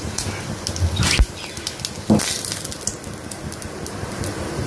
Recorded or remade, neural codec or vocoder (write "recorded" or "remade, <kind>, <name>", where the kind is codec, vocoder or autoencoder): recorded